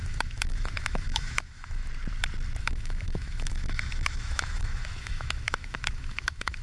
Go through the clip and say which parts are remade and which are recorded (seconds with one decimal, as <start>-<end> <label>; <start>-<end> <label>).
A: 0.0-1.8 remade; 1.8-2.6 recorded; 2.6-6.6 remade